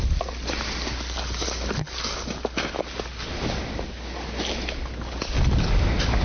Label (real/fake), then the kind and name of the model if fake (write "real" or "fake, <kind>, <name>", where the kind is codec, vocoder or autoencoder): real